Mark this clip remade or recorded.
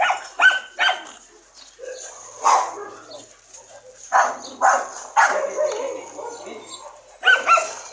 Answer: recorded